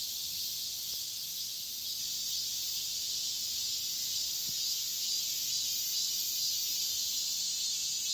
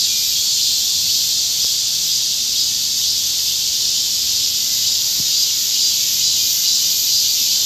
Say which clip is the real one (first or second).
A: first